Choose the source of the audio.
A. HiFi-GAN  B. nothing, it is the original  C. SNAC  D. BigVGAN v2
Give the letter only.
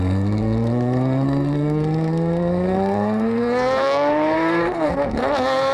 C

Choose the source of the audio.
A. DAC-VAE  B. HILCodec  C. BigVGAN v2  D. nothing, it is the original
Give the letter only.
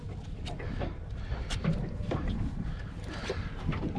D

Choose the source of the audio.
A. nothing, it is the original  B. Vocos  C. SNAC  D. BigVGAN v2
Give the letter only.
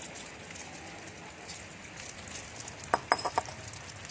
A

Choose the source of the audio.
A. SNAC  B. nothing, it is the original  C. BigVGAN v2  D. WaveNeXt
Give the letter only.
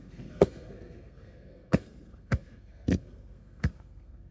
A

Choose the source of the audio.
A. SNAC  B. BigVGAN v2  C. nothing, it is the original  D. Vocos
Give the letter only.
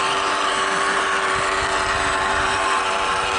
B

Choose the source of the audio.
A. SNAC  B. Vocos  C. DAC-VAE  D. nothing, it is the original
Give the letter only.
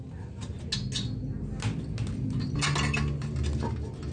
D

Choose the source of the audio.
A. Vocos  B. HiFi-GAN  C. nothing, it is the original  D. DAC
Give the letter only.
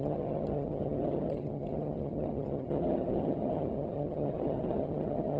B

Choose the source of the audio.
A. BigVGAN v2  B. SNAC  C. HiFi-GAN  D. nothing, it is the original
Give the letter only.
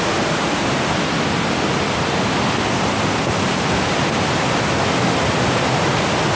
D